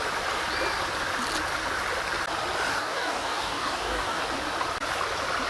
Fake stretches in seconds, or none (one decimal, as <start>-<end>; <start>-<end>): 2.7-4.2